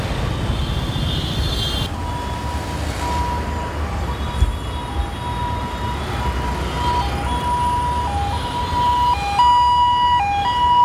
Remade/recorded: recorded